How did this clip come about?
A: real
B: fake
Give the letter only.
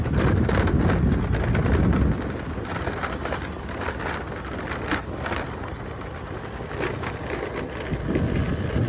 A